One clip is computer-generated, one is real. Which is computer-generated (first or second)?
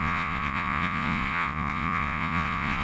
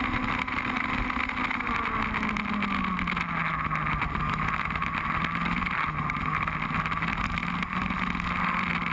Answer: first